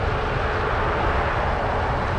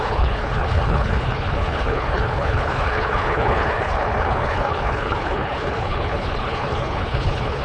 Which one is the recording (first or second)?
first